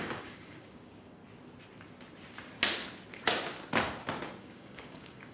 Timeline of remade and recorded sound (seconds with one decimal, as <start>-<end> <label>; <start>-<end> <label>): 0.0-1.2 remade; 1.2-4.4 recorded; 4.4-5.3 remade